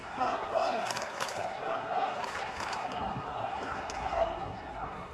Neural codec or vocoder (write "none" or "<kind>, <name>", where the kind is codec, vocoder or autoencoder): codec, SNAC